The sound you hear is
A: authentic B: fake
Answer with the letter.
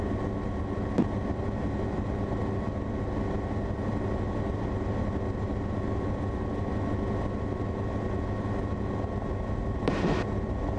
A